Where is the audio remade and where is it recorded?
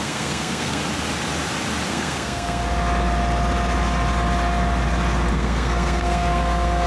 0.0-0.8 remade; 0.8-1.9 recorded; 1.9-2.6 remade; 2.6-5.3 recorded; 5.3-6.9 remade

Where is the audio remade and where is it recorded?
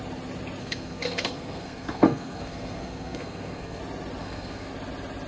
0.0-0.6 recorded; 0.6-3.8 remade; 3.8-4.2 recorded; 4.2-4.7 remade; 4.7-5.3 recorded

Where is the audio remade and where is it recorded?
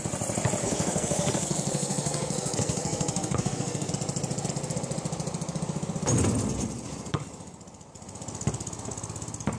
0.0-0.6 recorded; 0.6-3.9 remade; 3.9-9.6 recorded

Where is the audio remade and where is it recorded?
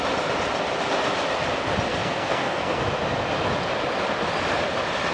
0.0-1.9 recorded; 1.9-2.8 remade; 2.8-5.1 recorded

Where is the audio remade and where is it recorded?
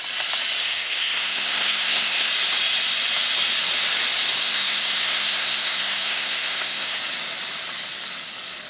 0.0-0.6 recorded; 0.6-2.3 remade; 2.3-4.4 recorded; 4.4-7.0 remade; 7.0-8.7 recorded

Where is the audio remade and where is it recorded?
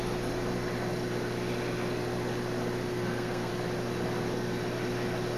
0.0-2.9 recorded; 2.9-3.5 remade; 3.5-5.4 recorded